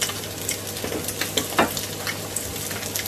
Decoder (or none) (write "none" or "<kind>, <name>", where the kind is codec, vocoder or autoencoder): none